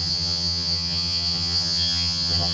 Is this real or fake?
fake